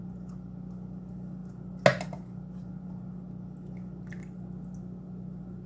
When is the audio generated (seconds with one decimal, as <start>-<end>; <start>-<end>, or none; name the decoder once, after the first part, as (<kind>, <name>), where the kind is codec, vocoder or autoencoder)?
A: none